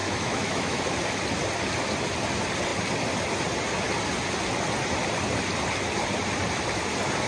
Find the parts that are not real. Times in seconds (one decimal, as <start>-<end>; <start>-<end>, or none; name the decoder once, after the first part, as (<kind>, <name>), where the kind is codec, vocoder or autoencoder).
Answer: 0.0-0.8 (autoencoder, DAC-VAE)